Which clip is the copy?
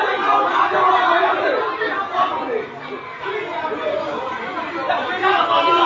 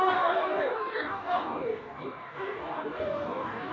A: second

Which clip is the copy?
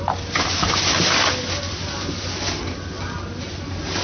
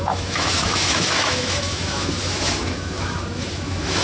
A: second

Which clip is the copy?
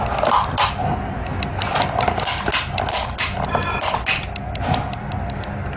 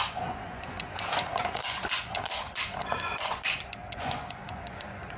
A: second